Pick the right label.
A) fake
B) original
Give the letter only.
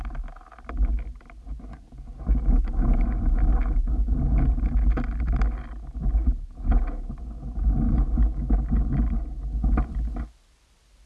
B